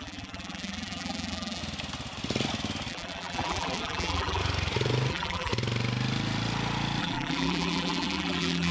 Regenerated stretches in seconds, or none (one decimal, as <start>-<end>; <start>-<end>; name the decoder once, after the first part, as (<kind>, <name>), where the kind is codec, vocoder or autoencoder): 0.0-1.6 (vocoder, BigVGAN v2); 2.9-4.4; 5.1-5.5; 7.0-8.7